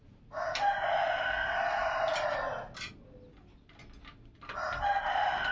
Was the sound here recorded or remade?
recorded